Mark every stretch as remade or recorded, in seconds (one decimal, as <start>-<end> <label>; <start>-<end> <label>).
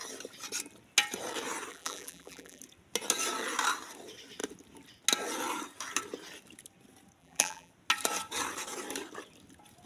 0.0-1.7 recorded; 1.7-2.6 remade; 2.6-7.2 recorded; 7.2-7.7 remade; 7.7-9.9 recorded